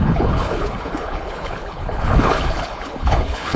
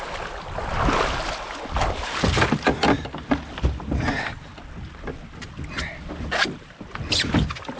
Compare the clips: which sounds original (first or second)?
second